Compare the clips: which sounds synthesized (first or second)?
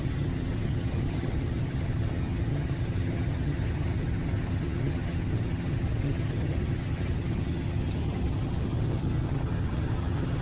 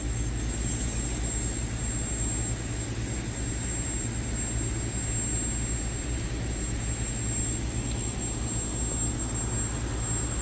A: first